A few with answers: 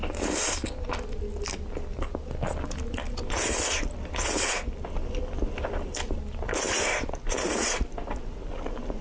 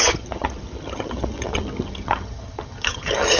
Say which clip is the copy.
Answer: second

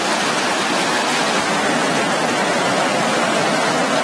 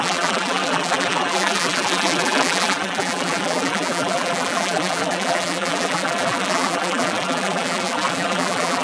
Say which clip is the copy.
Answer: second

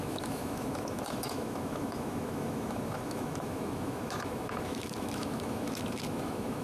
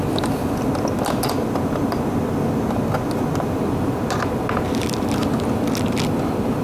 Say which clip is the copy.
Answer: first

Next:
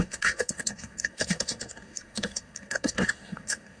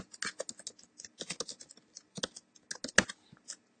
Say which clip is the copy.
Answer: first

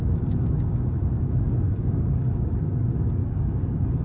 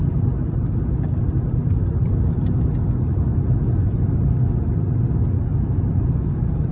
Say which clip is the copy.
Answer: first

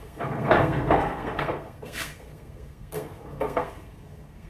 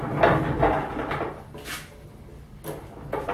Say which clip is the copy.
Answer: first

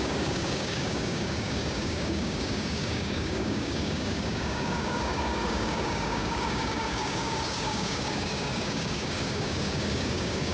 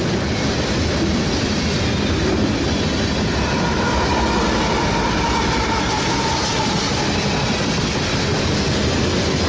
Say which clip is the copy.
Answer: first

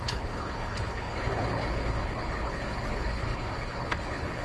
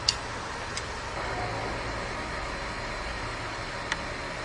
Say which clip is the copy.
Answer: first